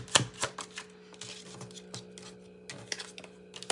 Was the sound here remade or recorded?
recorded